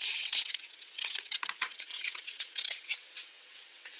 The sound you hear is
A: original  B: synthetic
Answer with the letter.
B